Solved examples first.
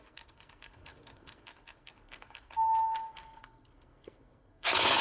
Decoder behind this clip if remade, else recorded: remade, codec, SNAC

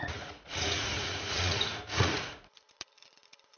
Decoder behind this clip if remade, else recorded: remade, vocoder, Vocos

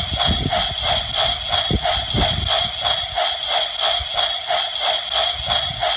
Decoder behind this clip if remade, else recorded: recorded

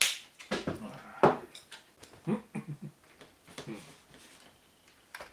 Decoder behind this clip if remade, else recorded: recorded